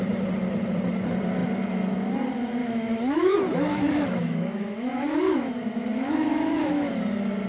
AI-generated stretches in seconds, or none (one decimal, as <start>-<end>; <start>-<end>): 2.6-3.3; 3.7-5.5; 5.9-6.9